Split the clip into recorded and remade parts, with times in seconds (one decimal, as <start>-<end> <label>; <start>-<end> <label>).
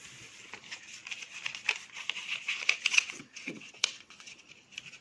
0.0-2.9 recorded; 2.9-4.5 remade; 4.5-5.0 recorded